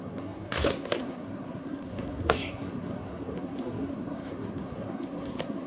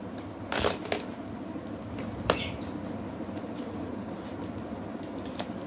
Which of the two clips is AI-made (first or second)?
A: first